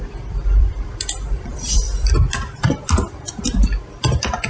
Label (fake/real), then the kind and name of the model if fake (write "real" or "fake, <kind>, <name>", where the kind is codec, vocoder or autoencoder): fake, vocoder, BigVGAN v2